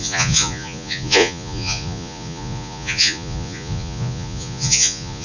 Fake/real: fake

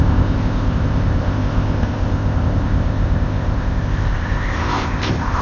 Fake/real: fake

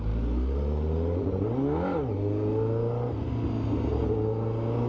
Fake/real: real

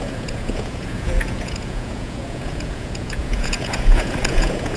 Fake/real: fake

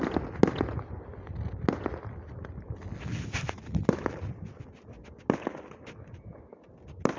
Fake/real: real